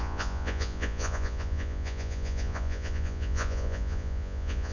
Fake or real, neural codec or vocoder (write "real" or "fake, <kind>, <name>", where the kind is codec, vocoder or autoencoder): fake, vocoder, Vocos